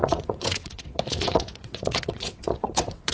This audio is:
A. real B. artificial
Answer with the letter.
B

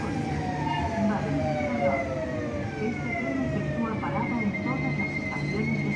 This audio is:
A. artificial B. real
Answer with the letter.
B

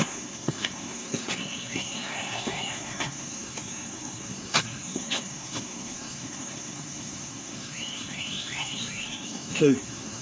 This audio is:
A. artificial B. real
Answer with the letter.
A